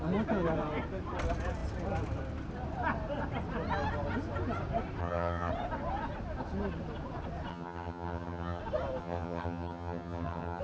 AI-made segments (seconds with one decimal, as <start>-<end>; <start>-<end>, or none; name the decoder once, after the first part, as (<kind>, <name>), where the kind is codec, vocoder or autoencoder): 5.0-5.5 (vocoder, HiFi-GAN); 7.5-8.6; 9.0-10.6